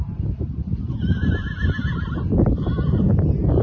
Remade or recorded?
recorded